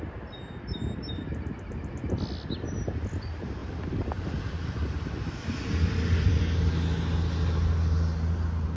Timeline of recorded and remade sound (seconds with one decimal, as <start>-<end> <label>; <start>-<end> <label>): 0.0-3.6 recorded; 3.6-6.3 remade; 6.3-8.8 recorded